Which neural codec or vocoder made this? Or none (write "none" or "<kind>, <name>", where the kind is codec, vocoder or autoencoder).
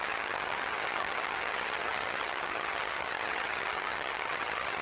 vocoder, HiFi-GAN